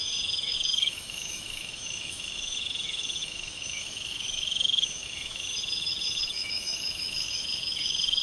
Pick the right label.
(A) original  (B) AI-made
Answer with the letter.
B